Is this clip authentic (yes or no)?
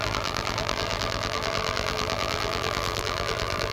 no